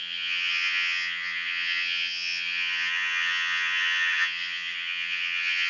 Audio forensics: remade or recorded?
remade